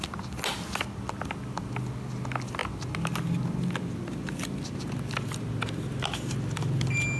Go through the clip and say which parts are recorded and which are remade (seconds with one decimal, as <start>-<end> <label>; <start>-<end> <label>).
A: 0.0-7.2 recorded